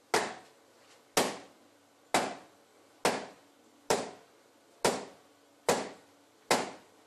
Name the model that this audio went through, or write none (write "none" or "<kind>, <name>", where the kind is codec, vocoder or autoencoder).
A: none